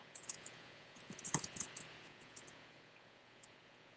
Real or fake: fake